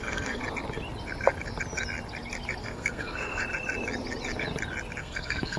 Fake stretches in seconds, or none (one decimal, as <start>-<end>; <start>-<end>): 0.0-0.4; 2.6-3.4; 5.0-5.6